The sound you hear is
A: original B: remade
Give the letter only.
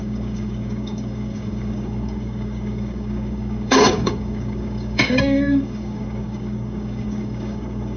B